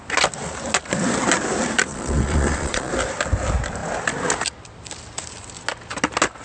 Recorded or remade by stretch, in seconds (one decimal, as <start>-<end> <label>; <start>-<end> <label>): 0.0-1.9 recorded; 1.9-2.9 remade; 2.9-6.4 recorded